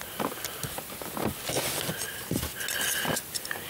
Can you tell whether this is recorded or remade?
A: recorded